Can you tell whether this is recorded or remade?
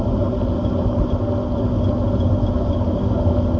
recorded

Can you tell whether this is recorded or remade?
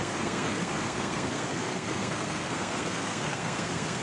remade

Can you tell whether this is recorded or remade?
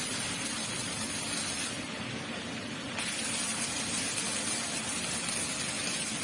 recorded